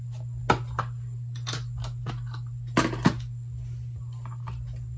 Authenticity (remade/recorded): recorded